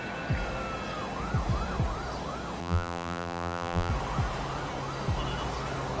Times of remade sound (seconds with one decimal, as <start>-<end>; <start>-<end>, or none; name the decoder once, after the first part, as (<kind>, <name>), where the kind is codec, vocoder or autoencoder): 2.6-3.9 (vocoder, BigVGAN v2)